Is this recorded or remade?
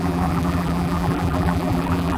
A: remade